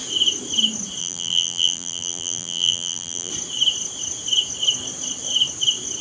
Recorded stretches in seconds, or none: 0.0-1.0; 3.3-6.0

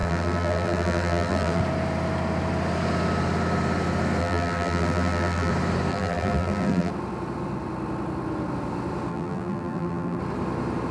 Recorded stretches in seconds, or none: 1.6-4.2; 5.5-5.9; 6.9-9.1; 10.2-10.9

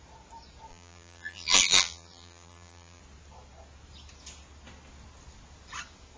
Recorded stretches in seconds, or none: 0.0-0.7; 3.0-6.2

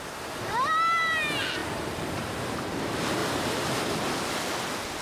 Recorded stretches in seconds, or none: 0.0-1.6; 2.8-3.2; 3.9-5.0

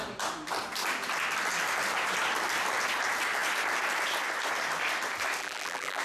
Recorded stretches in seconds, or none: 0.0-5.4

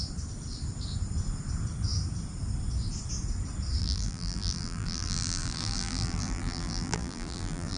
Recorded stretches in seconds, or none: 0.0-3.8

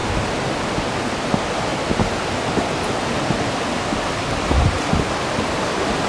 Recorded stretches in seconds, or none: 0.8-6.1